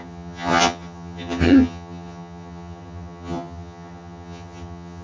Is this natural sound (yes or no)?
no